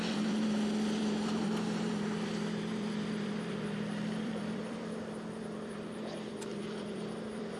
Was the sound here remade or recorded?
remade